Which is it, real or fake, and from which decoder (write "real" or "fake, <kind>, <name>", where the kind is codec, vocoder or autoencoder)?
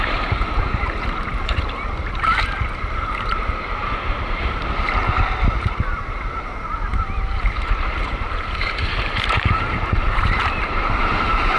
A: fake, vocoder, BigVGAN v2